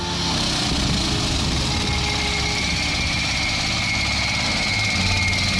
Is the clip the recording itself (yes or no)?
yes